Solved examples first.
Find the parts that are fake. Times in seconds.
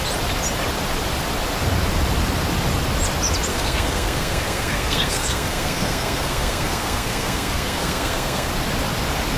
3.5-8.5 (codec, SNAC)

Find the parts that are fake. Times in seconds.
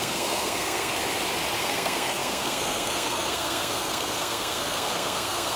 0.0-1.0 (codec, SNAC); 1.6-5.6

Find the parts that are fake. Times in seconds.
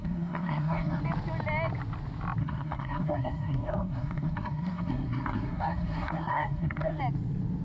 0.0-1.0 (codec, SNAC); 2.4-7.0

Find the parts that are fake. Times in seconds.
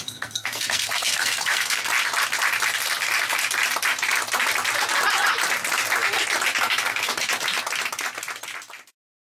0.0-1.9 (codec, SNAC); 6.6-7.1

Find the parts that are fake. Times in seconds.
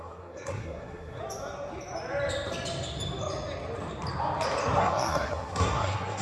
0.0-1.2 (codec, SNAC); 4.8-6.2